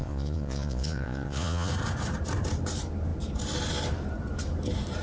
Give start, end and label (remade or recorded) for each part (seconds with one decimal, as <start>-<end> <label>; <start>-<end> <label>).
0.0-1.7 remade; 1.7-5.0 recorded